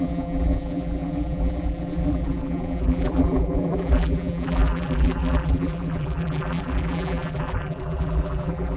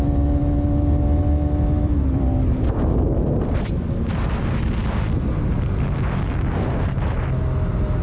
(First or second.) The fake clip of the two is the first